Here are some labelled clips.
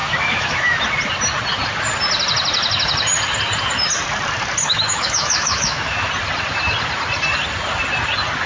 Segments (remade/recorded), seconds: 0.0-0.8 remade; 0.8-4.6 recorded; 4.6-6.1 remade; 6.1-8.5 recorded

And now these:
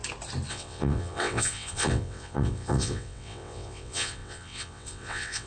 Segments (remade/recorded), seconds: 0.0-0.5 recorded; 0.5-5.5 remade

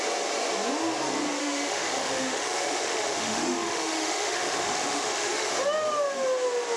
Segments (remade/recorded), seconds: 0.0-1.4 recorded; 1.4-5.5 remade; 5.5-6.8 recorded

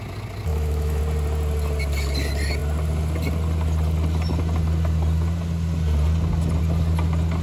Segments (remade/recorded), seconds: 0.0-0.5 recorded; 0.5-1.0 remade; 1.0-7.4 recorded